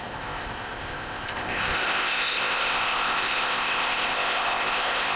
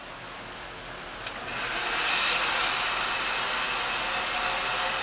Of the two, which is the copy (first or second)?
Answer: first